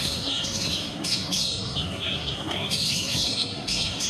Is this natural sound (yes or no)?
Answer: no